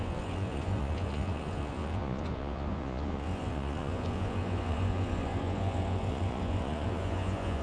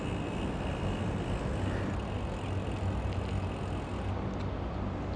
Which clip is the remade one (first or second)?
first